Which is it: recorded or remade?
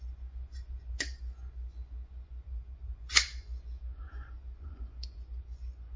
remade